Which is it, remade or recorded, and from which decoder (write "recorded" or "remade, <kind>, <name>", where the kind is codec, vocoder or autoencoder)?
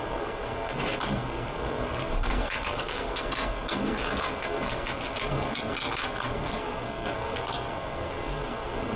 remade, codec, SNAC